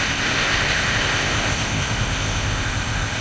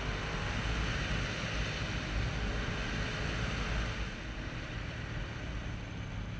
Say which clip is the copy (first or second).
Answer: first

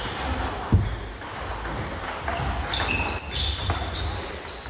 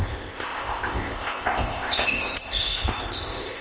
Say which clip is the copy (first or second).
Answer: second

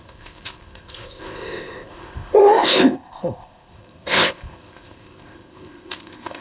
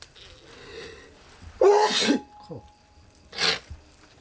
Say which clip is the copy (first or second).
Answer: first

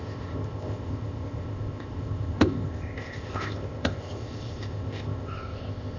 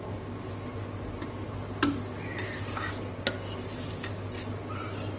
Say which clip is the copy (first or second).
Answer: first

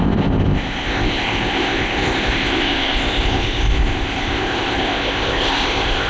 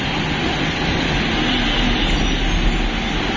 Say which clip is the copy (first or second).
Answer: first